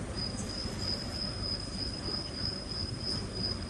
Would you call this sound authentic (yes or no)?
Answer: yes